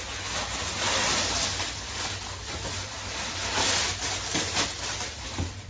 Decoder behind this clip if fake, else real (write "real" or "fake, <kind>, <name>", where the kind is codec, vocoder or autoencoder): real